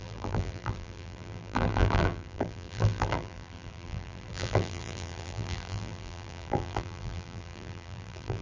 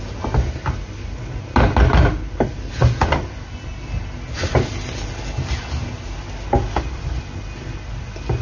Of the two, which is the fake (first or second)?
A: first